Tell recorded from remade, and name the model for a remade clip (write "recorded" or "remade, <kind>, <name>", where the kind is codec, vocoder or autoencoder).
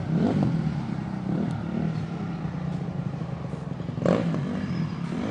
remade, vocoder, BigVGAN v2